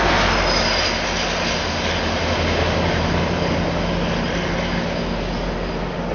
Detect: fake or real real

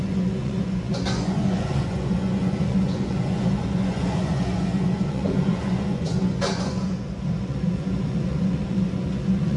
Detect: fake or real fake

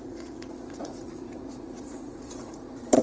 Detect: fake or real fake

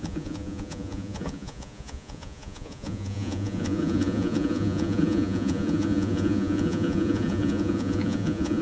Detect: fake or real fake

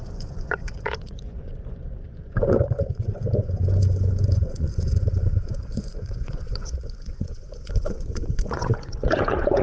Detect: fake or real fake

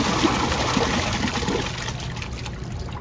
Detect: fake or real real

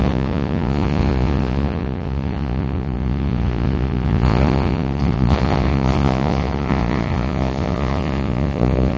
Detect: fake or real fake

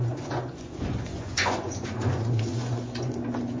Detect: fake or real fake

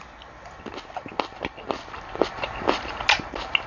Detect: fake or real real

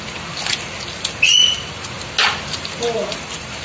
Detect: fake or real real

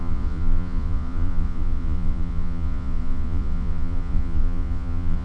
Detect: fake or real fake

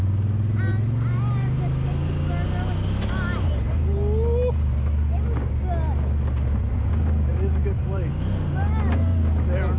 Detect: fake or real real